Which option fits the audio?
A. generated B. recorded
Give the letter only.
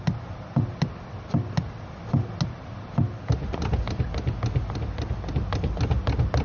B